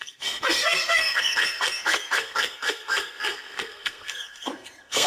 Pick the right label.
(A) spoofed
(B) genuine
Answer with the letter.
A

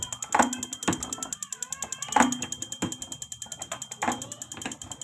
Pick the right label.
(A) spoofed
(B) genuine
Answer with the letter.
B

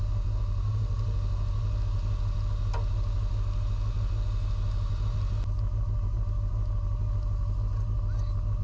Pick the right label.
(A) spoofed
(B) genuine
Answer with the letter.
B